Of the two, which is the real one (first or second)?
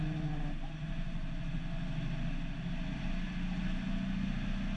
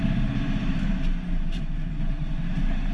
first